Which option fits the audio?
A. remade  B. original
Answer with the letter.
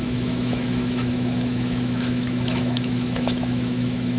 A